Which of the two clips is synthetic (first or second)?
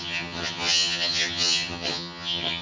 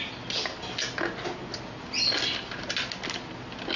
first